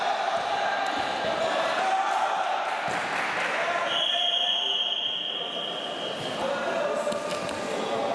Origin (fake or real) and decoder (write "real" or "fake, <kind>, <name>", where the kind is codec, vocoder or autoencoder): real